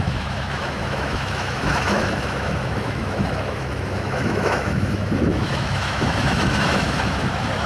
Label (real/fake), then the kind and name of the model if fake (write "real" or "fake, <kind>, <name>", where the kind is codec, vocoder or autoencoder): fake, autoencoder, DAC-VAE